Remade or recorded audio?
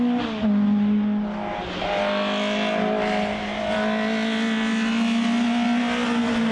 recorded